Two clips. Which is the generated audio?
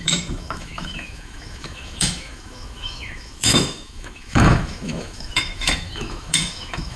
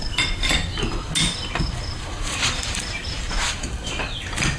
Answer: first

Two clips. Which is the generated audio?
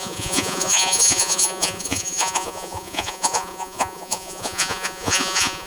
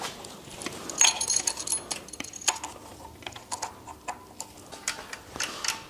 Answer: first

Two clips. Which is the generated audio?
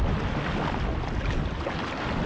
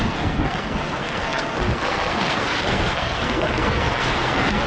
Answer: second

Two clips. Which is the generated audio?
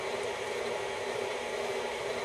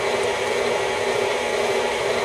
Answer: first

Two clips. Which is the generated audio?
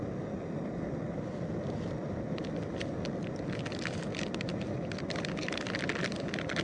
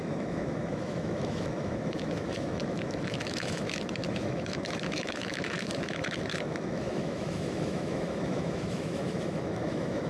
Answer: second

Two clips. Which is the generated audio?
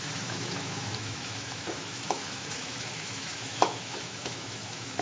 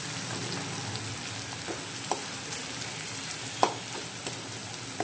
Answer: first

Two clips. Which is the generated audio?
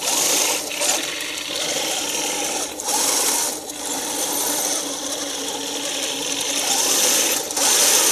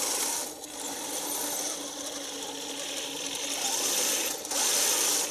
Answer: first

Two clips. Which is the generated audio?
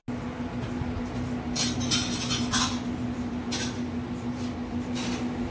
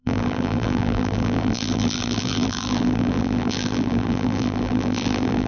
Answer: second